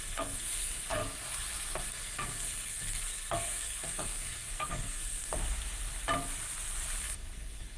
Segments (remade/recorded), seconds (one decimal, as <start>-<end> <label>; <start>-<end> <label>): 0.0-1.0 remade; 1.0-1.8 recorded; 1.8-5.4 remade; 5.4-7.0 recorded; 7.0-7.8 remade